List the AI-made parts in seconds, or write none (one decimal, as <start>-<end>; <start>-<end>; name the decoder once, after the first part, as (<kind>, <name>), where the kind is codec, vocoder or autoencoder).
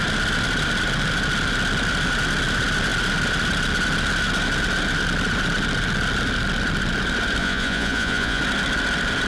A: 7.4-8.4 (vocoder, Vocos)